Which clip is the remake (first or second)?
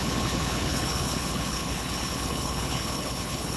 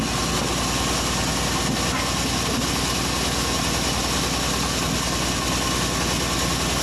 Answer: first